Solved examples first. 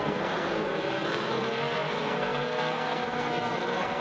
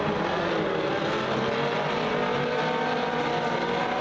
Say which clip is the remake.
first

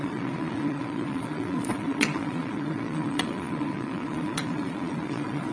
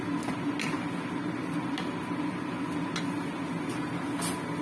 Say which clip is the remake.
first